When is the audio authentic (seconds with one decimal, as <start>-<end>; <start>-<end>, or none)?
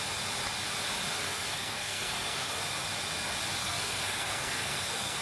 0.0-1.2; 2.5-3.6